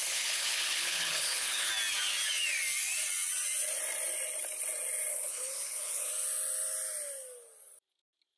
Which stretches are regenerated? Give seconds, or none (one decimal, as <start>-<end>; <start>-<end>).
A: 0.0-1.7; 5.1-6.1